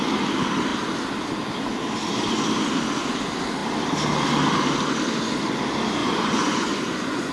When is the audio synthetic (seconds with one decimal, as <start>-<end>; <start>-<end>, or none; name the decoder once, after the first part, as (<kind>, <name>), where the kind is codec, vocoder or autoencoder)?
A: 6.0-7.3 (vocoder, Vocos)